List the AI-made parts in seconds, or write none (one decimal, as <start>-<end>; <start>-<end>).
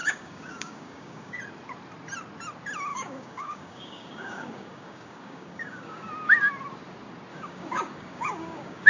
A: 0.0-1.4; 2.9-6.1; 7.3-8.9